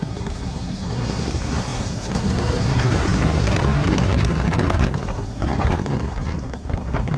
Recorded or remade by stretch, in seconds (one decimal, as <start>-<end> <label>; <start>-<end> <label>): 0.0-7.2 remade